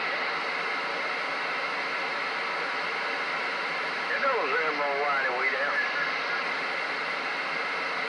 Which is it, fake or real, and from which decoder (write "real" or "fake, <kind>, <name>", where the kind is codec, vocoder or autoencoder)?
real